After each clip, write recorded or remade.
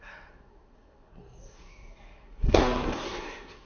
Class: remade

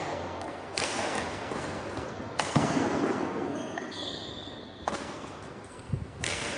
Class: remade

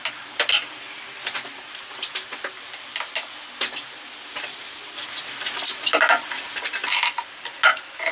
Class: recorded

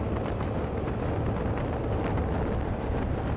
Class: recorded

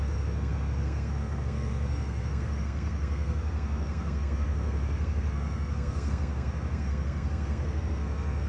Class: remade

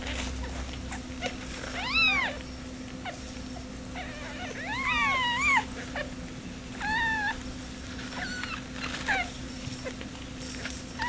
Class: recorded